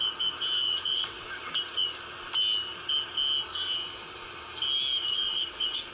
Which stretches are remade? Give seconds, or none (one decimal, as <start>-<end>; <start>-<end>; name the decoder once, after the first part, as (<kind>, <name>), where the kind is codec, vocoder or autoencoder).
0.6-1.5 (vocoder, BigVGAN v2); 4.9-5.9